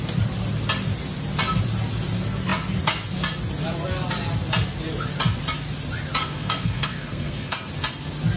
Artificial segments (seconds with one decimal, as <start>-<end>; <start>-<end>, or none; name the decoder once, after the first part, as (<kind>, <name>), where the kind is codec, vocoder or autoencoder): 6.2-7.7 (codec, SNAC)